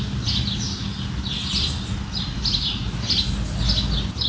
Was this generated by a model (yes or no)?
no